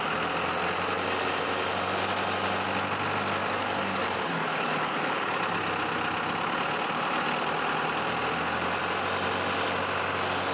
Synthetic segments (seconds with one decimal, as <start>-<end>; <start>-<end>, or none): 3.4-5.4